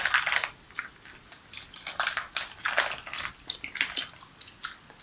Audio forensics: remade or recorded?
recorded